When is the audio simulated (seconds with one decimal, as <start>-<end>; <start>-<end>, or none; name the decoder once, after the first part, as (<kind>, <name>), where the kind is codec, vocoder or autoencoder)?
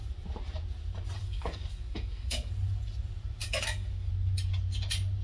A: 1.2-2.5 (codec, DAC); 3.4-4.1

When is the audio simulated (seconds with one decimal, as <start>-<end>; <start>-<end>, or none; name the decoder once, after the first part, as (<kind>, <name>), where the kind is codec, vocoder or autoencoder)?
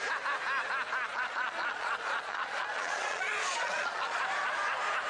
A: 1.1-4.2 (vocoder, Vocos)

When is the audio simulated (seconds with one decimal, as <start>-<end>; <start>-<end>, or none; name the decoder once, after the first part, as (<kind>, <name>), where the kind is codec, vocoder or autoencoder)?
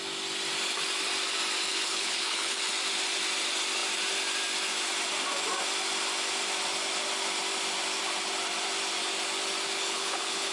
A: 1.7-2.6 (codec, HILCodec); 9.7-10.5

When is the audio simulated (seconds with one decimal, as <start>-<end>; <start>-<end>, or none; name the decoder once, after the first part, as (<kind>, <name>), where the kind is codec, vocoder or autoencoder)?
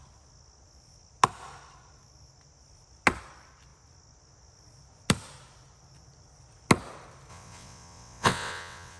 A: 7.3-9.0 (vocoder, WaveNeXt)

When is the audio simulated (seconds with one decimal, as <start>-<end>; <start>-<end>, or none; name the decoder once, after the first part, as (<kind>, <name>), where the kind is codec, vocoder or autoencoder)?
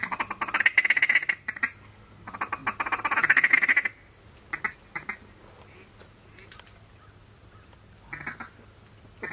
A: none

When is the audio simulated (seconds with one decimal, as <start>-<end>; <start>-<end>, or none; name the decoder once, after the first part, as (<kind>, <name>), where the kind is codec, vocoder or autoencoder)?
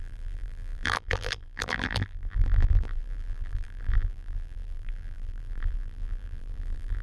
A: 0.0-7.0 (vocoder, BigVGAN v2)